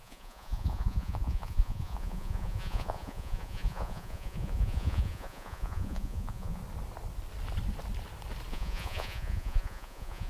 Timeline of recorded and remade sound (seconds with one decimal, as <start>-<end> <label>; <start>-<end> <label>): 0.0-6.6 remade; 6.6-8.5 recorded; 8.5-10.3 remade